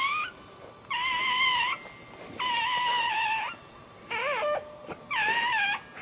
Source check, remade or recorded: recorded